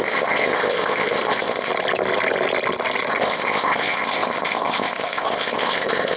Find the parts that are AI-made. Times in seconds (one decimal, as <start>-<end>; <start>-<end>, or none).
0.0-1.7; 3.1-6.2